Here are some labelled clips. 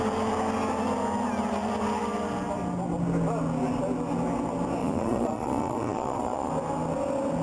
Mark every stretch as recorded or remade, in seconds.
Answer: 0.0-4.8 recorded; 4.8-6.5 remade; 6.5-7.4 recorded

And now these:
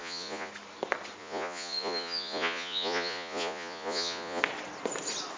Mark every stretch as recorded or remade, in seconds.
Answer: 0.0-0.5 remade; 0.5-1.2 recorded; 1.2-4.4 remade; 4.4-5.4 recorded

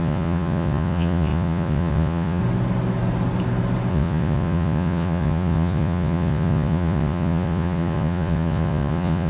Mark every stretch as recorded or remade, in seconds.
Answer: 0.0-2.4 remade; 2.4-3.9 recorded; 3.9-9.3 remade

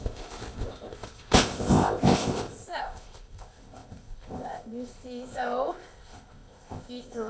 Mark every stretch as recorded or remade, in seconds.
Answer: 0.0-7.3 remade